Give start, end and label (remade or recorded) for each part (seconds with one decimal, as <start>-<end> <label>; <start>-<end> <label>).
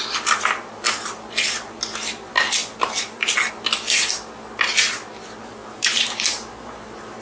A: 0.0-5.6 recorded; 5.6-6.8 remade; 6.8-7.2 recorded